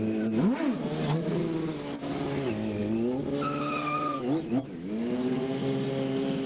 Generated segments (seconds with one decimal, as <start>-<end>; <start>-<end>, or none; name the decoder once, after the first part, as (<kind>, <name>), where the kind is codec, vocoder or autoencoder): none